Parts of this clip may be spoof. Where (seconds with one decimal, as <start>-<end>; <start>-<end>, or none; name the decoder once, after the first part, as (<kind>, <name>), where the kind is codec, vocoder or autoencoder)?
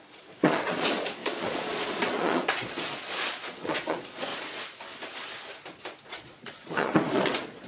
0.0-4.3 (vocoder, Vocos); 6.1-7.7